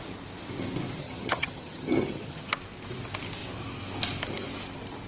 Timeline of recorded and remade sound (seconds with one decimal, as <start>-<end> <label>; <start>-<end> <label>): 0.0-1.0 recorded; 1.0-2.5 remade; 2.5-5.1 recorded